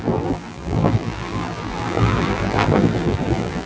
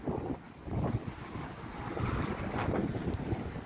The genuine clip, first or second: second